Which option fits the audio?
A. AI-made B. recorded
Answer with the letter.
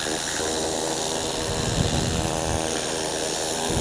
B